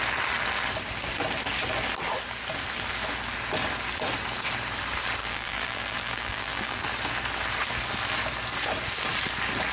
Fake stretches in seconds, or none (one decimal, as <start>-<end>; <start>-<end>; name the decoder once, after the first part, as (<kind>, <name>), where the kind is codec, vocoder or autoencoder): 5.2-6.8 (vocoder, BigVGAN v2)